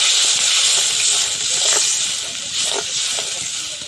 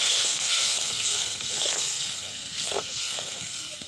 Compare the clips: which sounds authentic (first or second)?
first